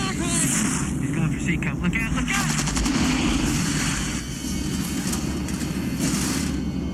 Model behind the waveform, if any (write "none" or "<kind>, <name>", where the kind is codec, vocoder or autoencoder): none